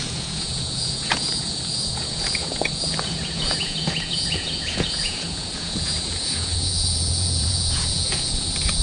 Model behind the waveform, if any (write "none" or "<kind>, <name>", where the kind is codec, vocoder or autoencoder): vocoder, Vocos